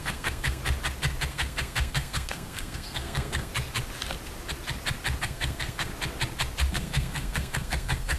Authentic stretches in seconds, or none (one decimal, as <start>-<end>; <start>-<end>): 0.6-1.3; 3.5-5.2; 5.9-6.7